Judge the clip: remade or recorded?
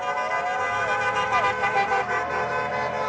recorded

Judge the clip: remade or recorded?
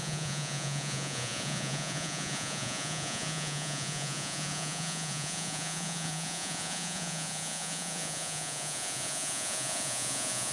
remade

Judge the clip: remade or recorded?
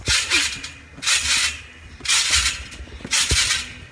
recorded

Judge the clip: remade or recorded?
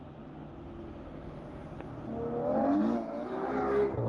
recorded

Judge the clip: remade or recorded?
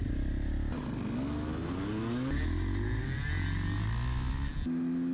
recorded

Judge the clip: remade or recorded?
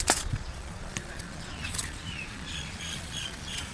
remade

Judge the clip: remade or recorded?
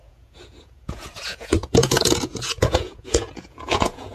remade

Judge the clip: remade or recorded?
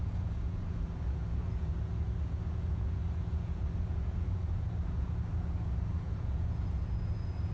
remade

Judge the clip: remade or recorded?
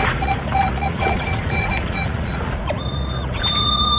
remade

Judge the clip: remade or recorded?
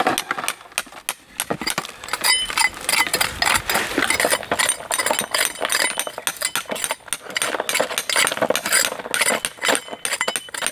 recorded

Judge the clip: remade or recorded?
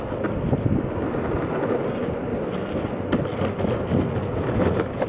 recorded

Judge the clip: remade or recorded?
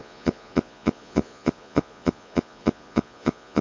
remade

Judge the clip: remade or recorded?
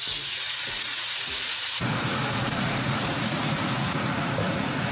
remade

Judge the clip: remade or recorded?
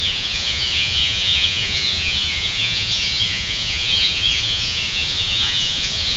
remade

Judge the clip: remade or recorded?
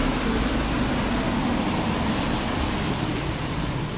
recorded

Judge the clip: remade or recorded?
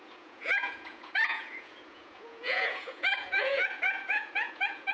remade